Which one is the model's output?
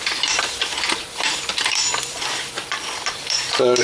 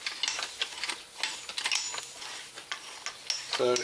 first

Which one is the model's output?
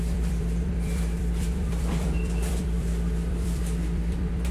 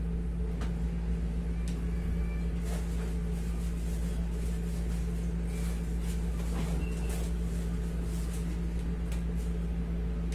first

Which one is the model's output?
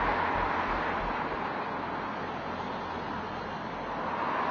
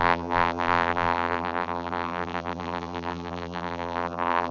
second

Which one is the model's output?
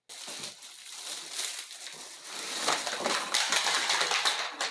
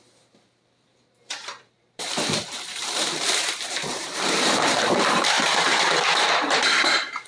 second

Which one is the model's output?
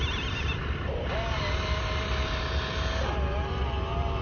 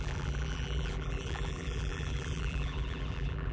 second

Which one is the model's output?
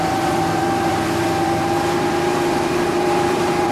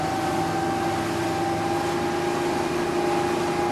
first